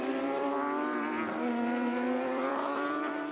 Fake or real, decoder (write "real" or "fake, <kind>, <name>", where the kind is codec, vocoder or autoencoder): fake, vocoder, BigVGAN v2